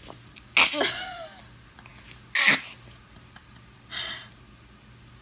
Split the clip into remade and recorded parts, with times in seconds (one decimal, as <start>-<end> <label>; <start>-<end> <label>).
0.0-5.2 recorded